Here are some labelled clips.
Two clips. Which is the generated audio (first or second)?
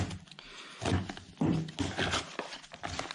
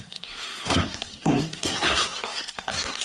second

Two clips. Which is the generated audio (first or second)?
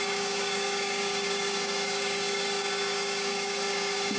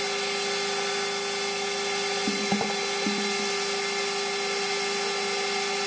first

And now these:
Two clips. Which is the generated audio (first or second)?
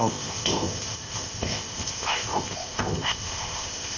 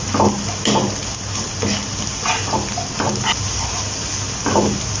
first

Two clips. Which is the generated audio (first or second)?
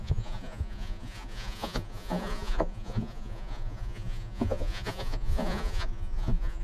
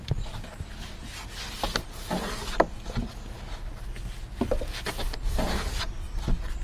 first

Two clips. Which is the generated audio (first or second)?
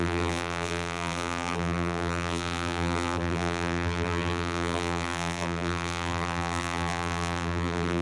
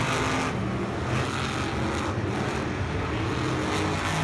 first